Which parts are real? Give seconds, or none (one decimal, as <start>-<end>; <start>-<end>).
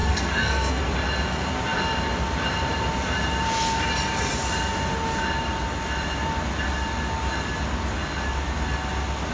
0.9-9.3